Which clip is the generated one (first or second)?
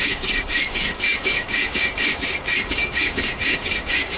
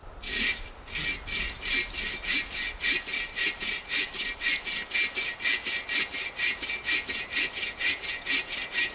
first